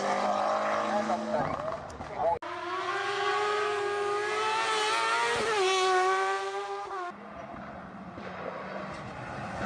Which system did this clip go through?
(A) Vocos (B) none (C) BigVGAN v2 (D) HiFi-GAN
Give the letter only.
B